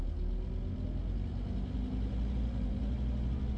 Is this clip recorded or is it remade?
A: recorded